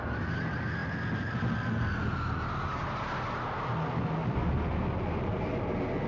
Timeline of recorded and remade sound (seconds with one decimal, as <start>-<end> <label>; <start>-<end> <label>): 0.0-6.1 recorded